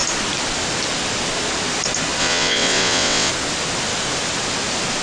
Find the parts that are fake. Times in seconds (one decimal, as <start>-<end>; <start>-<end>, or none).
2.2-3.3